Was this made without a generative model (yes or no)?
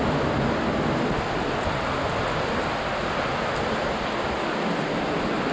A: yes